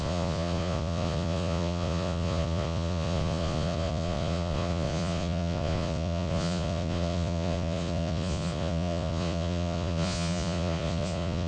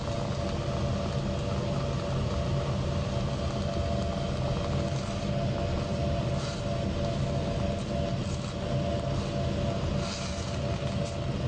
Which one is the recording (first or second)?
second